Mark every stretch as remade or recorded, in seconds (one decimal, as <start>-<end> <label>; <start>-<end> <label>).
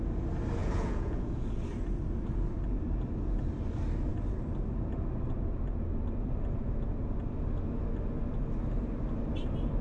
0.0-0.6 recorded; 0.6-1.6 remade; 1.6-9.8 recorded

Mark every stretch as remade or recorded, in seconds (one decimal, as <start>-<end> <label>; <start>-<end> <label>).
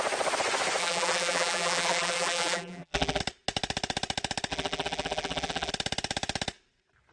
0.0-0.8 recorded; 0.8-3.2 remade; 3.2-4.5 recorded; 4.5-5.7 remade; 5.7-7.1 recorded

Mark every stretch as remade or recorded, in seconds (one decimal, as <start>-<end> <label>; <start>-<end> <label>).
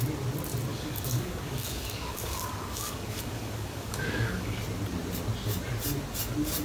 0.0-0.7 recorded; 0.7-4.6 remade; 4.6-6.6 recorded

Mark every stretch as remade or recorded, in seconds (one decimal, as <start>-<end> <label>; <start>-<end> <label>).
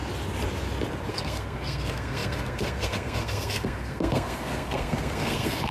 0.0-1.1 recorded; 1.1-5.7 remade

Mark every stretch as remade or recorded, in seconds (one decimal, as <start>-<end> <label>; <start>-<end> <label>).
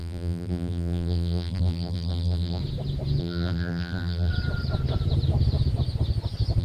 0.0-2.6 remade; 2.6-3.2 recorded; 3.2-4.3 remade; 4.3-6.6 recorded